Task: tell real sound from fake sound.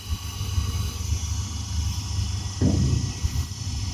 real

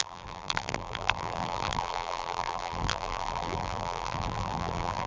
fake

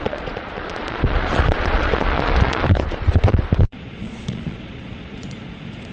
fake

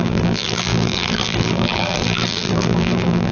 fake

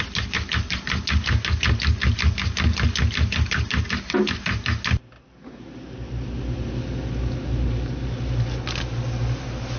real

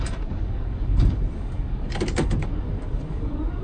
fake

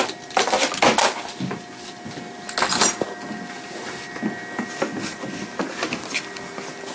real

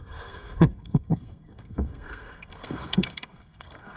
fake